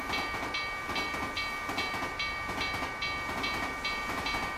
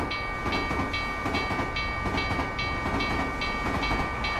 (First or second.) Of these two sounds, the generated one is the first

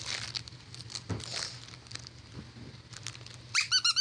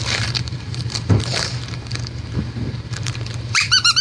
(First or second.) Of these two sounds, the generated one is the second